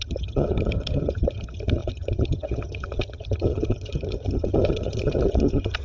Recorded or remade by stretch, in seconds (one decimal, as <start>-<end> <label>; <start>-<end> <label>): 0.0-5.8 remade